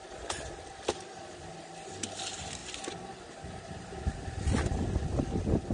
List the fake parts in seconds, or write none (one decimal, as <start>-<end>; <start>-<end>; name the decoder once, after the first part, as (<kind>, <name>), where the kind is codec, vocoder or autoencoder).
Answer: none